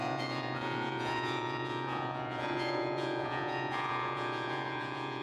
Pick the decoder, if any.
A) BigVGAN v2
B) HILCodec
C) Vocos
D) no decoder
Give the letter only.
C